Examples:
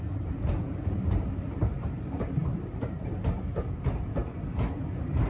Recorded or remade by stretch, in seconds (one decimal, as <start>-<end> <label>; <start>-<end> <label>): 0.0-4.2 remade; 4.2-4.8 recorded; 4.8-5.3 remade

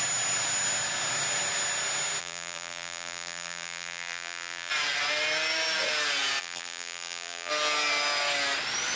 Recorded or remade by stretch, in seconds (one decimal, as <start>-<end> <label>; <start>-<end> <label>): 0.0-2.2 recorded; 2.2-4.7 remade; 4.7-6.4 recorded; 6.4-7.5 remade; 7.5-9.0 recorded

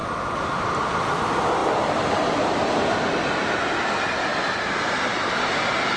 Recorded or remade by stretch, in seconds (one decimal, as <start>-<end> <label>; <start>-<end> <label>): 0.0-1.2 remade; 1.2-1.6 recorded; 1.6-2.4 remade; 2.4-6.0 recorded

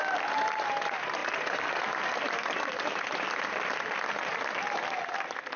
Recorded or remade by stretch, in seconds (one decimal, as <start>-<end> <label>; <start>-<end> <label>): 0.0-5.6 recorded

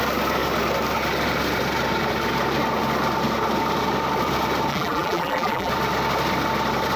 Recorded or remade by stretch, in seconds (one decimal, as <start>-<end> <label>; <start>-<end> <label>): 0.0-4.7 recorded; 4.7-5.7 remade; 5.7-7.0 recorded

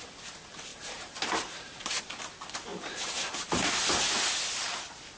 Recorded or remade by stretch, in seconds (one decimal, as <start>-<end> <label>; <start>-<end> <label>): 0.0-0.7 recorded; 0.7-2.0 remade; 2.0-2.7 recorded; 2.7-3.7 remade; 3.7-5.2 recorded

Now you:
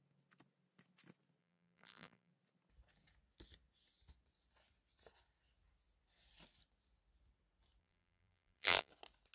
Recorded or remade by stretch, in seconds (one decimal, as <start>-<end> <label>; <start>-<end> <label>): 0.0-1.4 recorded; 1.4-2.3 remade; 2.3-7.8 recorded; 7.8-8.9 remade; 8.9-9.3 recorded

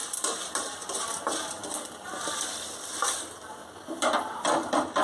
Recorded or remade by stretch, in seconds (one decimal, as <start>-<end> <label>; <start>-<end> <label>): 0.0-5.0 remade